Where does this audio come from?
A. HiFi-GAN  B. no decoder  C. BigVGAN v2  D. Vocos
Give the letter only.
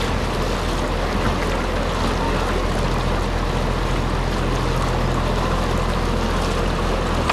B